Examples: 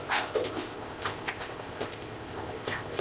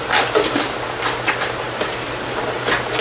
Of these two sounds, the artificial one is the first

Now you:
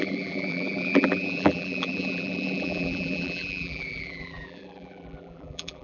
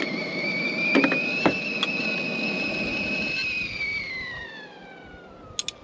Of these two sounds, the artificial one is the first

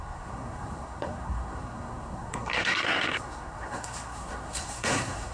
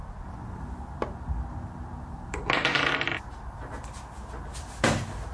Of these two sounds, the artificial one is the first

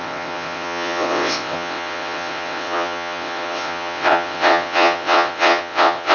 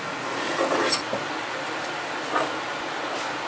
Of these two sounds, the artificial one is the first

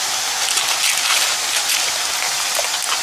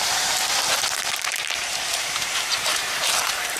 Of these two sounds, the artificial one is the second